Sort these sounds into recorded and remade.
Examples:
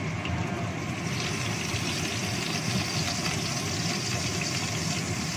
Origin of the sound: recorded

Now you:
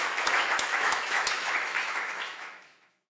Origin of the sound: remade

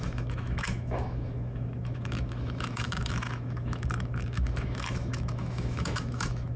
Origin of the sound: remade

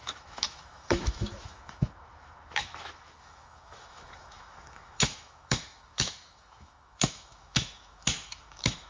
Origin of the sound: remade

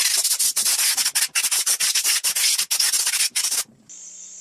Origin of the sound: recorded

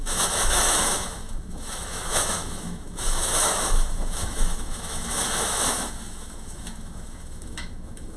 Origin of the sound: remade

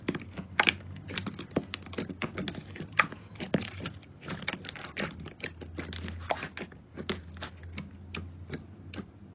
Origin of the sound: recorded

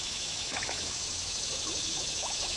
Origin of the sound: remade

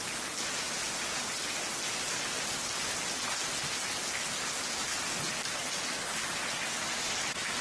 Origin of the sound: recorded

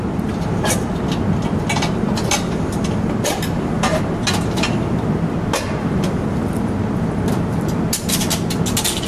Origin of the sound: recorded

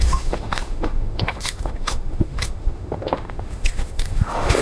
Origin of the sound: remade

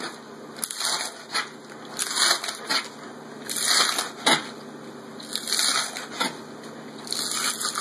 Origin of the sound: recorded